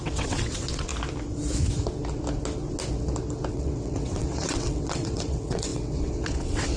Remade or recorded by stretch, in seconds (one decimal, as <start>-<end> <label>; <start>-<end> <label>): 0.0-0.9 remade; 0.9-3.5 recorded; 3.5-6.8 remade